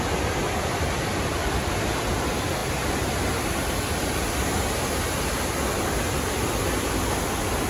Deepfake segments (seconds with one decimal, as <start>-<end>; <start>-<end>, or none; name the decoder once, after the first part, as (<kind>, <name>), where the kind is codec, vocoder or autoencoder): 1.4-2.0 (vocoder, BigVGAN v2)